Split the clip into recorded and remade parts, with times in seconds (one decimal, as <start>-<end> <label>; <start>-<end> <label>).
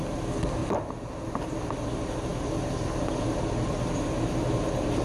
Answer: 0.0-0.6 recorded; 0.6-1.3 remade; 1.3-5.0 recorded